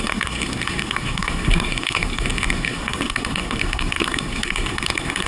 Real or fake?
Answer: fake